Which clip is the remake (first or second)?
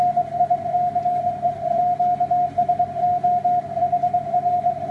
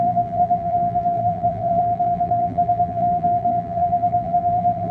second